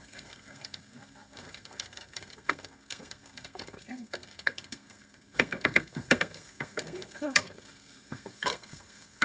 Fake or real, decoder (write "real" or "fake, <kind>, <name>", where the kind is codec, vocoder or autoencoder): fake, codec, SNAC